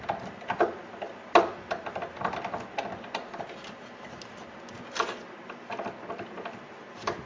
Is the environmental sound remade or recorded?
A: recorded